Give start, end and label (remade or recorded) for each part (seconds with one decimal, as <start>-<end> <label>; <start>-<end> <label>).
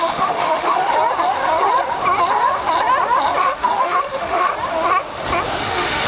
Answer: 0.0-0.9 remade; 0.9-3.4 recorded; 3.4-4.5 remade; 4.5-5.6 recorded; 5.6-6.1 remade